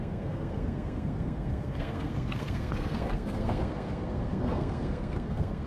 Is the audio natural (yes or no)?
no